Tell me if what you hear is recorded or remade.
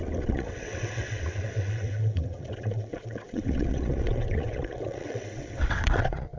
remade